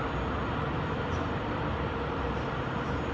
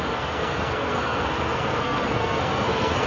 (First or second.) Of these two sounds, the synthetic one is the second